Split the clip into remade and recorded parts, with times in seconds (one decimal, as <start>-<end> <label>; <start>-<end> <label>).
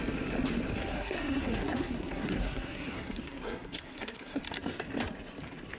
0.0-0.9 recorded; 0.9-4.4 remade; 4.4-5.8 recorded